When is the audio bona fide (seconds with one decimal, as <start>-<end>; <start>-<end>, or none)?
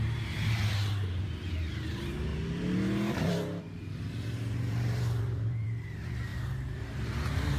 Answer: 2.3-3.6; 6.3-7.6